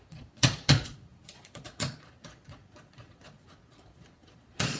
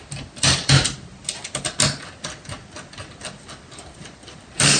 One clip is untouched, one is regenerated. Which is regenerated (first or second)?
first